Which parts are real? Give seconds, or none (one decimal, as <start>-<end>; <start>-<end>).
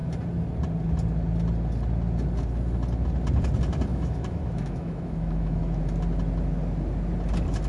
0.0-3.9; 5.8-7.7